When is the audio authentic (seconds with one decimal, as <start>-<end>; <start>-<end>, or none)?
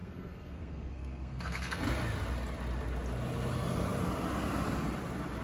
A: 1.8-5.4